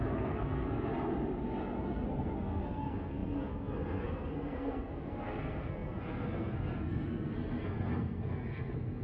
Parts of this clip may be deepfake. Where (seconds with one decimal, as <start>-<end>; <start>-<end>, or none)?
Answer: 0.0-0.9; 1.6-9.0